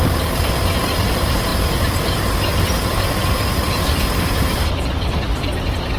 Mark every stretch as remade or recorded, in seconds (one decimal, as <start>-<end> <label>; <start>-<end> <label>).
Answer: 0.0-1.5 remade; 1.5-2.2 recorded; 2.2-3.2 remade; 3.2-4.5 recorded; 4.5-6.0 remade